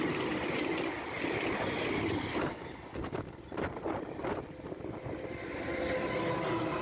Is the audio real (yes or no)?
yes